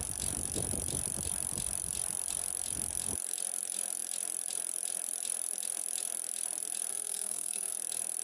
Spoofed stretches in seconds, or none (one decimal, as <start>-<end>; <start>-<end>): 6.9-7.7